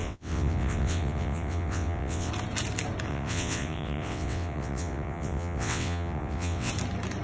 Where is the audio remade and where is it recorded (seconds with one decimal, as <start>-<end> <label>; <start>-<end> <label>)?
0.0-2.3 remade; 2.3-3.1 recorded; 3.1-6.7 remade; 6.7-7.2 recorded